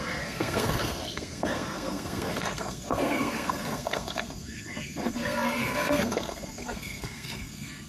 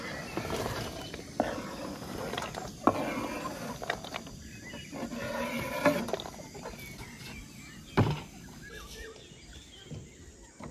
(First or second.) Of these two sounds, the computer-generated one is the first